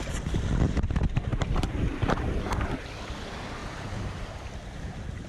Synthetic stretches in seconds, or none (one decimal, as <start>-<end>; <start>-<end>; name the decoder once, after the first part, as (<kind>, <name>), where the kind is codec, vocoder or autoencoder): 1.3-2.4 (vocoder, BigVGAN v2); 3.6-4.3